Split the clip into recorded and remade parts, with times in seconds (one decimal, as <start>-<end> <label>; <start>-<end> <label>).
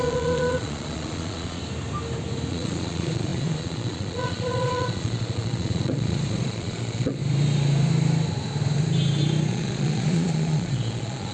0.0-1.6 remade; 1.6-2.5 recorded; 2.5-7.2 remade; 7.2-9.5 recorded; 9.5-11.3 remade